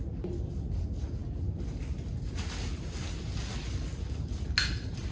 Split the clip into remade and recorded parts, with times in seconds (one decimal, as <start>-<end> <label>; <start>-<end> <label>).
0.0-5.1 recorded